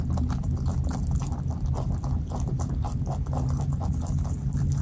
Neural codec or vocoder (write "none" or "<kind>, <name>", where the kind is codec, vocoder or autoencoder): none